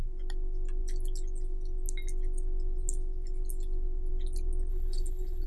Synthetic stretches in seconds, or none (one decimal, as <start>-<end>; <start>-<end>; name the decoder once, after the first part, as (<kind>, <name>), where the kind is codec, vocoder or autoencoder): 4.7-5.5 (codec, HILCodec)